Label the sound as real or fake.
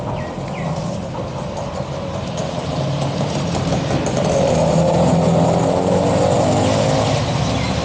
real